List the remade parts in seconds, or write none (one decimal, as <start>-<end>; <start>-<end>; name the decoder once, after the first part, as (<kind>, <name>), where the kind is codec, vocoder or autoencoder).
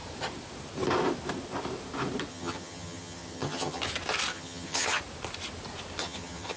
2.3-3.8 (vocoder, HiFi-GAN); 4.3-5.0; 6.0-6.6